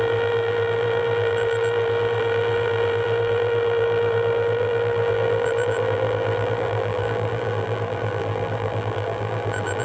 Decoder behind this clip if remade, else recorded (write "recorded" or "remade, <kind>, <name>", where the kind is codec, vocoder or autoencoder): remade, vocoder, BigVGAN v2